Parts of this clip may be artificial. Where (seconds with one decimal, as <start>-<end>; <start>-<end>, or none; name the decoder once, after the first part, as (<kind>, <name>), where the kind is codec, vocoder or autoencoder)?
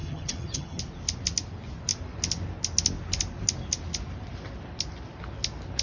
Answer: 0.0-0.8 (vocoder, HiFi-GAN)